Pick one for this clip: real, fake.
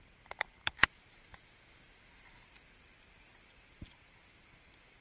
real